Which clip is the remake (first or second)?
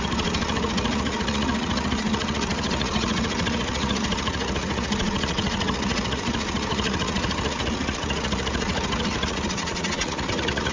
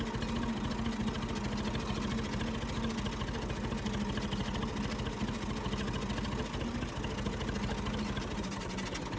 first